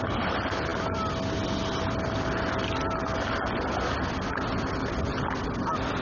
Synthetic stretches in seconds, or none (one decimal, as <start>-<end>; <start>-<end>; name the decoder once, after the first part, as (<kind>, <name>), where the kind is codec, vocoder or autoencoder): none